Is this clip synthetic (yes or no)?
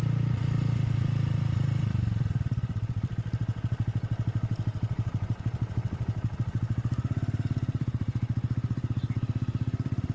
yes